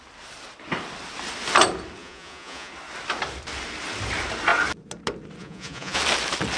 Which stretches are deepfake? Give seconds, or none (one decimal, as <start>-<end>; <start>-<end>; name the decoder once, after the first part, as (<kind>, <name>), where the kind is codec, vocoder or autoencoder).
2.0-2.7 (vocoder, Vocos); 5.4-6.0

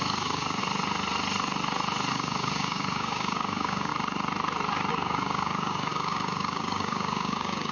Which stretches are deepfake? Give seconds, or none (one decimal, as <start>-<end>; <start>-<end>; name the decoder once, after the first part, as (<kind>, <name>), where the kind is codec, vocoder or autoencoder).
0.0-0.6 (codec, DAC); 2.1-3.9; 4.9-7.7

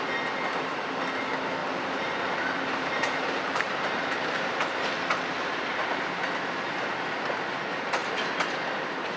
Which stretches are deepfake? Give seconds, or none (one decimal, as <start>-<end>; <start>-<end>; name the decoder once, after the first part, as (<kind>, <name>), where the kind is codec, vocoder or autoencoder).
1.6-6.0 (vocoder, BigVGAN v2)

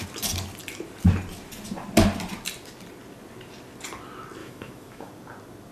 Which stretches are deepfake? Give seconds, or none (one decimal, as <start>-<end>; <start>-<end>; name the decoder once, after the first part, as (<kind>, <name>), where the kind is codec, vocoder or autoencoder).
4.4-5.1 (autoencoder, DAC-VAE)